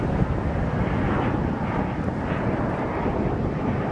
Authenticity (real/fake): real